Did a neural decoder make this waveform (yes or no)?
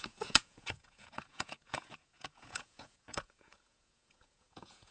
yes